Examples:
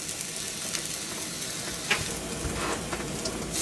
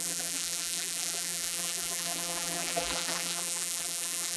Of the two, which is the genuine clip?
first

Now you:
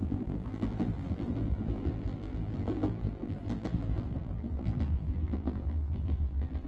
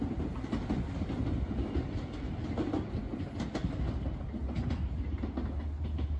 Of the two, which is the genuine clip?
second